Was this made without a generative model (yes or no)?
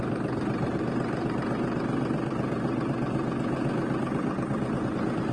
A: no